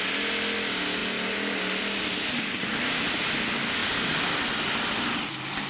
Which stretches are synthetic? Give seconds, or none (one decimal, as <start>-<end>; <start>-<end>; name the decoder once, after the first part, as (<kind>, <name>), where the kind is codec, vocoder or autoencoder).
none